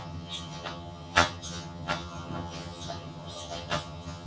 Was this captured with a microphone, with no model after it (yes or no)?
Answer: no